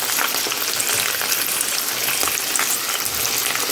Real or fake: real